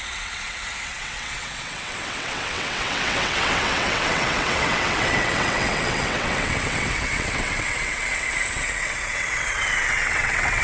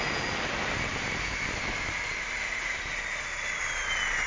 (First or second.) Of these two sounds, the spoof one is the first